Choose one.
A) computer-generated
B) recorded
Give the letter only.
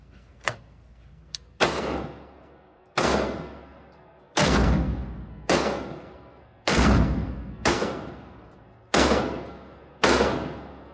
A